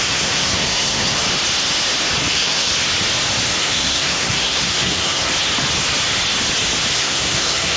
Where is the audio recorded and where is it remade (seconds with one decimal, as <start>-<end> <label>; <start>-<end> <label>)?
0.0-1.2 remade; 1.2-2.3 recorded; 2.3-2.7 remade; 2.7-3.6 recorded; 3.6-5.3 remade; 5.3-6.9 recorded; 6.9-7.8 remade